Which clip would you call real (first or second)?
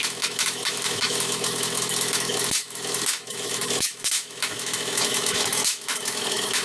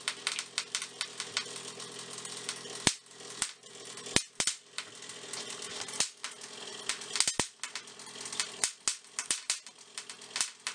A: second